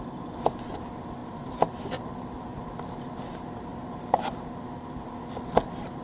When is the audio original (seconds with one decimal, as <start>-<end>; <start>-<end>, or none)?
0.0-1.2; 2.6-3.7; 4.2-6.0